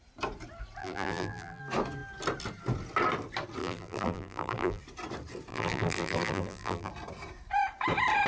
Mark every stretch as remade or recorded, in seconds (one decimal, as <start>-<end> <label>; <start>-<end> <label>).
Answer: 0.0-0.8 recorded; 0.8-1.6 remade; 1.6-3.6 recorded; 3.6-4.8 remade; 4.8-5.5 recorded; 5.5-6.9 remade; 6.9-8.3 recorded